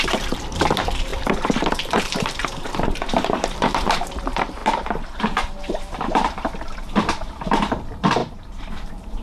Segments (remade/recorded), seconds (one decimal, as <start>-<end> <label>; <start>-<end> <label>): 0.0-9.2 remade